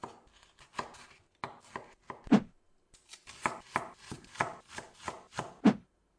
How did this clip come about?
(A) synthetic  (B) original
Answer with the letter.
B